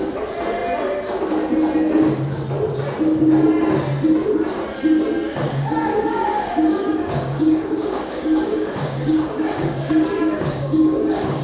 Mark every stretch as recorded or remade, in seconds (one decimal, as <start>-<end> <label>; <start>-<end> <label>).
0.0-5.9 recorded; 5.9-11.4 remade